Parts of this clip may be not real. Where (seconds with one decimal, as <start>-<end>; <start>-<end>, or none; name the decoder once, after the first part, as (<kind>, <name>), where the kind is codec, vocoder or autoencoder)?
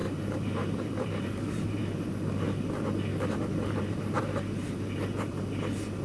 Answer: 0.0-1.8 (vocoder, BigVGAN v2); 3.1-4.2